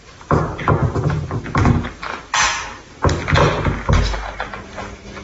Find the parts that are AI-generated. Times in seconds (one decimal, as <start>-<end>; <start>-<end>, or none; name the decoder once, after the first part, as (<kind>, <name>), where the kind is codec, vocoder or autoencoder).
none